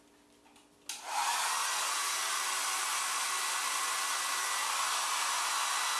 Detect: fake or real real